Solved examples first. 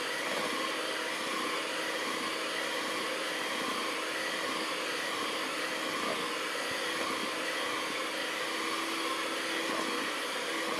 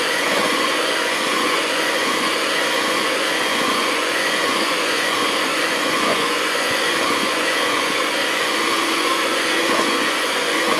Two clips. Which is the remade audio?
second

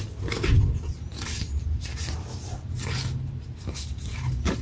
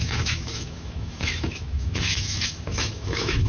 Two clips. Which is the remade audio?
second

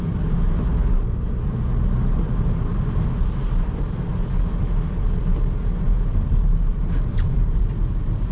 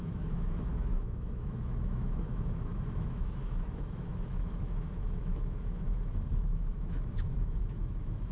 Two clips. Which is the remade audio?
second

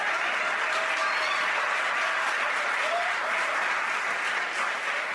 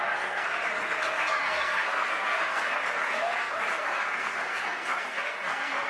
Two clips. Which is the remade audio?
second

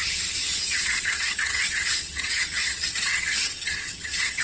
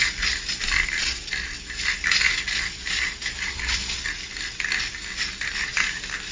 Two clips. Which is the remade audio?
first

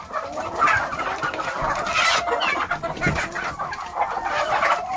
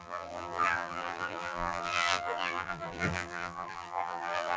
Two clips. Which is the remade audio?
second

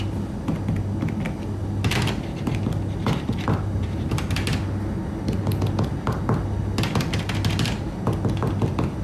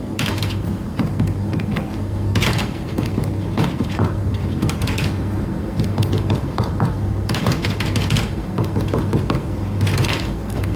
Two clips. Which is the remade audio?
second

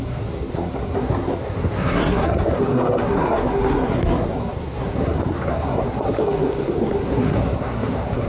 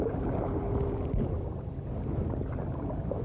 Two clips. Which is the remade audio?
first